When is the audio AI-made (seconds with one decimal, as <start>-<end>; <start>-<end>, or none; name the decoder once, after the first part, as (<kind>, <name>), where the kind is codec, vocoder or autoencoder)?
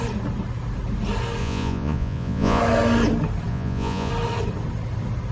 1.4-2.6 (vocoder, Vocos); 3.5-4.1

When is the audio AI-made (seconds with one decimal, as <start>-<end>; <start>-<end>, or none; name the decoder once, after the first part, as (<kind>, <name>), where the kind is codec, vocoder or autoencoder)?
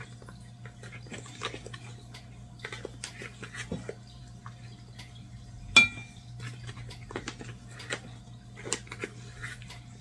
none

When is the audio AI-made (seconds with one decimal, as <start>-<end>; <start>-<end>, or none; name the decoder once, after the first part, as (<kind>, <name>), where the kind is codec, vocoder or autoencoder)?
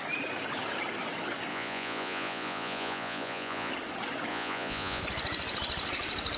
1.5-3.7 (vocoder, Vocos); 4.3-5.0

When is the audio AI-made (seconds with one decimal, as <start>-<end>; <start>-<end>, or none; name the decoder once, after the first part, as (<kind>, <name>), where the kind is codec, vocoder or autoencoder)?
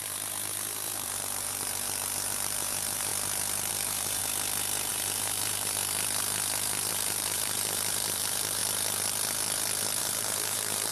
0.0-3.1 (vocoder, BigVGAN v2); 3.7-4.2; 4.9-5.8; 6.9-8.6; 10.0-10.9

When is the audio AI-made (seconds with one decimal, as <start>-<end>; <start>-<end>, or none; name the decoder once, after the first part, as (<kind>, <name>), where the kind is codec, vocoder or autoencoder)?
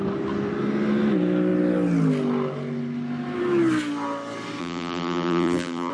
4.6-5.9 (vocoder, BigVGAN v2)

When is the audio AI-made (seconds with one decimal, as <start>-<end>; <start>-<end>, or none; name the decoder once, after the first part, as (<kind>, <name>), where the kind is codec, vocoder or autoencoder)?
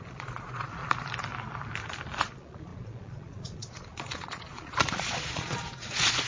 0.0-0.8 (vocoder, Vocos); 2.2-6.3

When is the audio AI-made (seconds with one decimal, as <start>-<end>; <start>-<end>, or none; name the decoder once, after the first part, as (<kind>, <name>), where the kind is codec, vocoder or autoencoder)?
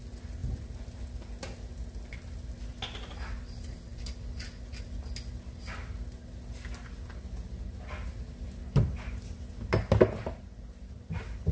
none